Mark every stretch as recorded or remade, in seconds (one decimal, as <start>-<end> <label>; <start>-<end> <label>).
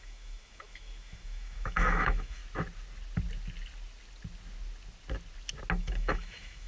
0.0-2.4 remade; 2.4-5.8 recorded; 5.8-6.7 remade